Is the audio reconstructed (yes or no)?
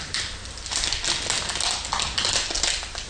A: no